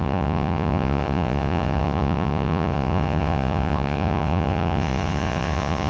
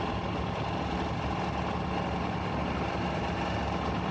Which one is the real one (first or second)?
second